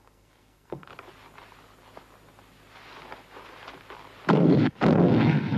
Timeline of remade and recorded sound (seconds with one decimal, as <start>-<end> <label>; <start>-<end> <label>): 0.0-0.9 remade; 0.9-4.3 recorded; 4.3-5.6 remade